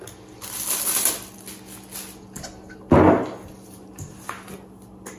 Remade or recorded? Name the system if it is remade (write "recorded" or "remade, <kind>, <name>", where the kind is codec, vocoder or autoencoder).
recorded